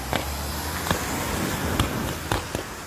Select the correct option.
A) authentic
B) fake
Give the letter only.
A